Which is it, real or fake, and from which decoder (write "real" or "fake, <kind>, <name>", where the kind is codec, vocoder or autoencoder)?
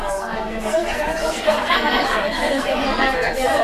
fake, codec, SNAC